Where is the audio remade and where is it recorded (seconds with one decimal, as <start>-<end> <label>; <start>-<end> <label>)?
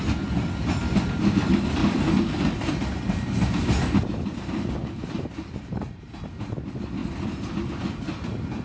0.0-1.8 recorded; 1.8-2.7 remade; 2.7-4.8 recorded; 4.8-6.2 remade; 6.2-8.6 recorded